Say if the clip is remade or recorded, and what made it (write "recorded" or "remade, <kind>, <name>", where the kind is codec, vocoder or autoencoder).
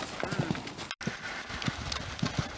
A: recorded